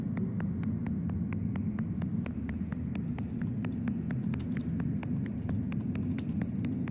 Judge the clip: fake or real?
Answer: real